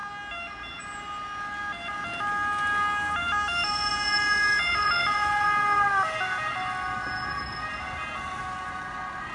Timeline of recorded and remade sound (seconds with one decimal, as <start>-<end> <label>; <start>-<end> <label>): 0.0-9.3 recorded